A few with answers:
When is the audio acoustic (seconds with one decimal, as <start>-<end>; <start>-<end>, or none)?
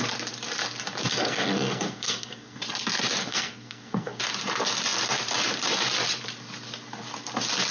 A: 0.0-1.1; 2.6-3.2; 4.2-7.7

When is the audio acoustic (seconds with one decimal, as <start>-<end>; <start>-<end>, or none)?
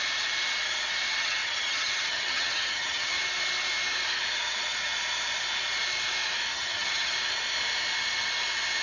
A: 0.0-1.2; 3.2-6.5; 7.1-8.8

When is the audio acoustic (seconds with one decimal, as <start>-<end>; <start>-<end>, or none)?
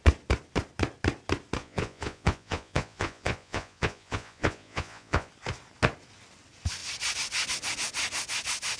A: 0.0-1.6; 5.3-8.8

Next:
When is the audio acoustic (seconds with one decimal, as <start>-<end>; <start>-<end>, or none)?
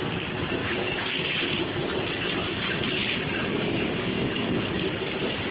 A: 0.0-0.6; 1.7-3.5; 4.6-5.5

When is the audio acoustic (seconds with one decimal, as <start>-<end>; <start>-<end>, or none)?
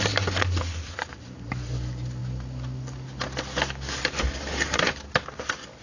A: 0.0-5.8